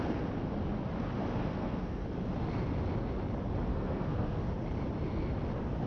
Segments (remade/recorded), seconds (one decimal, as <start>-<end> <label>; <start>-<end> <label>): 0.0-1.4 recorded; 1.4-2.0 remade; 2.0-3.7 recorded; 3.7-4.5 remade; 4.5-5.9 recorded